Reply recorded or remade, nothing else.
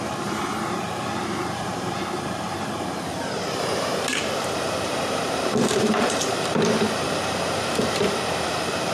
remade